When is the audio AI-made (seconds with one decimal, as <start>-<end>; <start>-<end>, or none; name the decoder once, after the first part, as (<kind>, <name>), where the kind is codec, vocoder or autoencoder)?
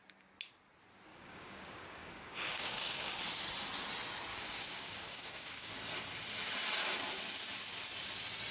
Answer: 1.1-3.2 (codec, DAC); 4.3-5.7